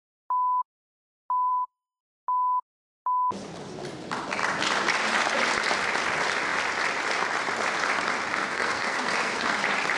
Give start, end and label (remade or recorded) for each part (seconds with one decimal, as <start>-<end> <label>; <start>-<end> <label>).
0.0-1.5 recorded; 1.5-2.0 remade; 2.0-8.3 recorded; 8.3-9.6 remade; 9.6-10.0 recorded